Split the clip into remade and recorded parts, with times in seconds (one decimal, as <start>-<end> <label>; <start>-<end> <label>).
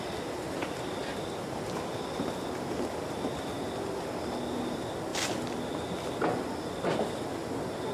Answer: 0.0-7.9 recorded